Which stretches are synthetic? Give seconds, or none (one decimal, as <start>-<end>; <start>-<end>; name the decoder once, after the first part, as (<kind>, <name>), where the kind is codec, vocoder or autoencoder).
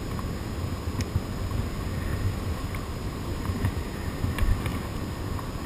2.1-3.7 (vocoder, BigVGAN v2)